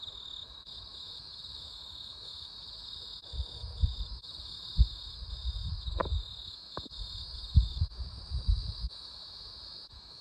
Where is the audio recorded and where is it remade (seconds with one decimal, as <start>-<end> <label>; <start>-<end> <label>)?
0.0-10.2 remade